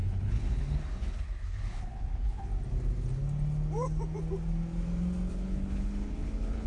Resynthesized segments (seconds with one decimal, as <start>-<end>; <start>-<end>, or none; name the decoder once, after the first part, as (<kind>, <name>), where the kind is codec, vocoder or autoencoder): 0.0-2.5 (codec, HILCodec); 5.3-6.7

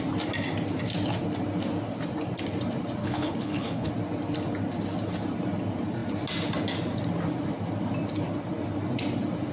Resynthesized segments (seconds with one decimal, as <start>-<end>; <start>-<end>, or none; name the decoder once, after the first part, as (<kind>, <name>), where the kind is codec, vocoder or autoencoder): 3.0-3.9 (codec, HILCodec)

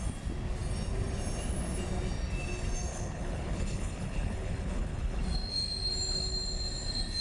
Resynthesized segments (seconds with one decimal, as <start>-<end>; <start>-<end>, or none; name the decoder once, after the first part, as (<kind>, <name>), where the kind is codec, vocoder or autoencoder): 2.9-5.2 (codec, HILCodec)

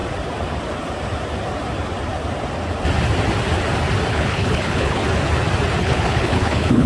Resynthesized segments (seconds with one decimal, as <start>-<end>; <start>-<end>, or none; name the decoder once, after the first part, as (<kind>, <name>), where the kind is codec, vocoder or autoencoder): 4.1-5.0 (codec, HILCodec); 5.8-6.9